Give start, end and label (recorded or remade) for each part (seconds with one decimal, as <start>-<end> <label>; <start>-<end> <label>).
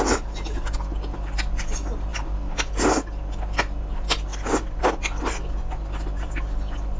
0.0-7.0 recorded